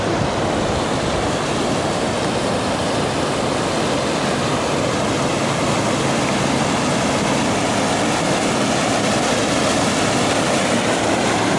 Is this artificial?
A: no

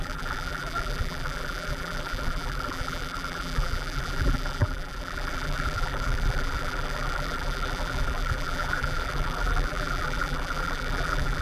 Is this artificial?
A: yes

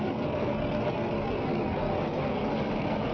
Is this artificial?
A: yes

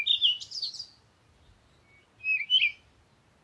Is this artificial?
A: no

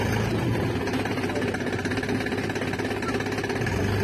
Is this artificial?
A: no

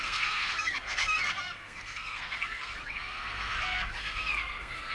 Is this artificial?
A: yes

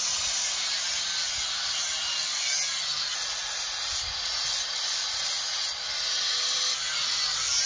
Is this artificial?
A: no